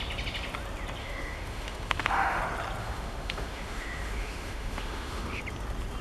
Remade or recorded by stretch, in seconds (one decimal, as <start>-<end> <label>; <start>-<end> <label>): 0.0-1.0 recorded; 1.0-2.4 remade; 2.4-2.8 recorded; 2.8-5.4 remade; 5.4-6.0 recorded